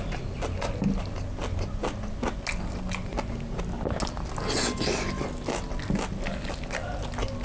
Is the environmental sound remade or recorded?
recorded